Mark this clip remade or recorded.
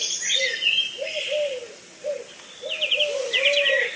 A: recorded